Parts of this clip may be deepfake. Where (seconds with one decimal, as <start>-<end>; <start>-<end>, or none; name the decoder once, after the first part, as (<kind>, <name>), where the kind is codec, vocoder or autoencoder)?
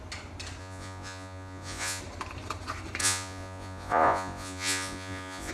0.6-2.0 (vocoder, Vocos); 3.0-5.5